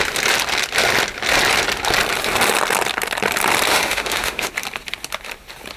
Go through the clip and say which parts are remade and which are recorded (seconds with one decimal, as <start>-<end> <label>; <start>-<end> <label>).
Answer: 0.0-3.7 recorded; 3.7-4.5 remade; 4.5-5.8 recorded